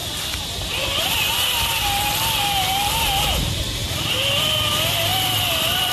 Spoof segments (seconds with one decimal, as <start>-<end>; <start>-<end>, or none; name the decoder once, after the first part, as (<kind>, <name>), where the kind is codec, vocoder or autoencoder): 0.0-2.1 (vocoder, BigVGAN v2); 3.8-4.5; 5.1-5.9